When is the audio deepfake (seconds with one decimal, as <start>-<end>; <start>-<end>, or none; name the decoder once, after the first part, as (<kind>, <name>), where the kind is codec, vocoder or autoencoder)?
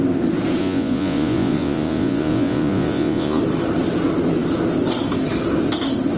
0.6-3.4 (vocoder, Vocos)